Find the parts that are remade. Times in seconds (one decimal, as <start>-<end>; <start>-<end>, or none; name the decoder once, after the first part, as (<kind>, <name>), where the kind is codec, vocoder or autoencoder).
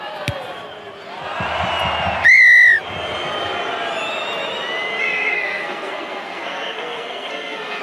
5.0-7.8 (codec, SNAC)